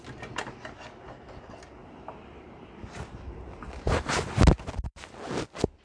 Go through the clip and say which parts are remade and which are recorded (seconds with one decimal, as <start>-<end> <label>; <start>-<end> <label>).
0.0-1.8 recorded; 1.8-4.1 remade; 4.1-5.8 recorded